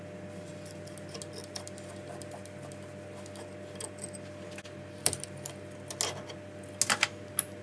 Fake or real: real